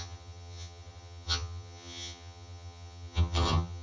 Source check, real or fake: fake